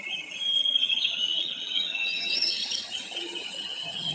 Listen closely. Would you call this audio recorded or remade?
remade